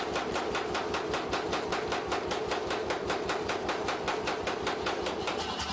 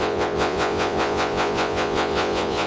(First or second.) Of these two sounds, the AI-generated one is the second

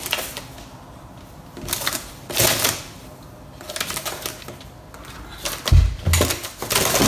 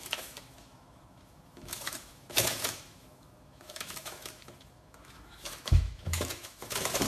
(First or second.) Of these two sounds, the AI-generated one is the second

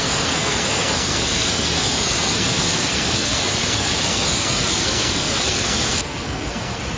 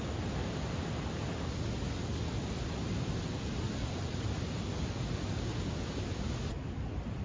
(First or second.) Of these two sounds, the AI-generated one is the first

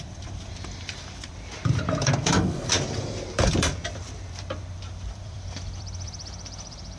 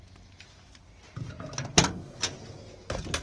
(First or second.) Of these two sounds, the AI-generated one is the first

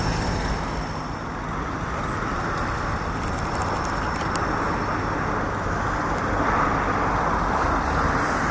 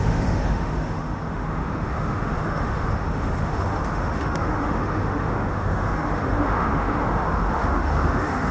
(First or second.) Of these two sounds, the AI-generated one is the second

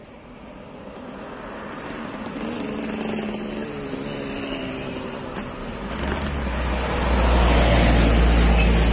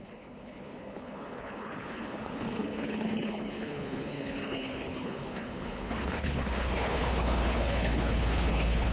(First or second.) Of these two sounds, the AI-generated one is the second